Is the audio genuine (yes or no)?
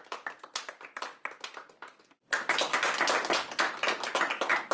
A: yes